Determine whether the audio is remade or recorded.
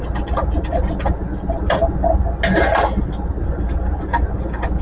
recorded